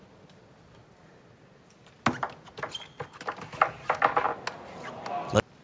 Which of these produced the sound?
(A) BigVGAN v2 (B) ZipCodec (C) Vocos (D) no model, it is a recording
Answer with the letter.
D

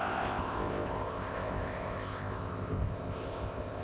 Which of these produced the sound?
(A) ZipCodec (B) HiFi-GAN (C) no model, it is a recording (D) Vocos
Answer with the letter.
A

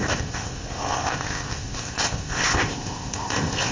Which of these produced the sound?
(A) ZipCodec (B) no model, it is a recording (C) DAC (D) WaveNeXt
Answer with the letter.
A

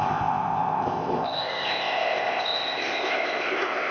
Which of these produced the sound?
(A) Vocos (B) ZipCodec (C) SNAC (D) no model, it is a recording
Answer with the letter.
B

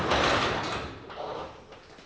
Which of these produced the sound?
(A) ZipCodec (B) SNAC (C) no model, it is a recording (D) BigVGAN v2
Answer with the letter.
C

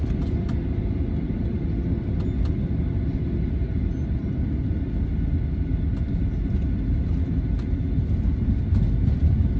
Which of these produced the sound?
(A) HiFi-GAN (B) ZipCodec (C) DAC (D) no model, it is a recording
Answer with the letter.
D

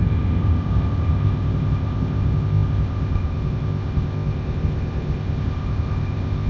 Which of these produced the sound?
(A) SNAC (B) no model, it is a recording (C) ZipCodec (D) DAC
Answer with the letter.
C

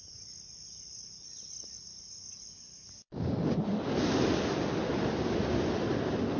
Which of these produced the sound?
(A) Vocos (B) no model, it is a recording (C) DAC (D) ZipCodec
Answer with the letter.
B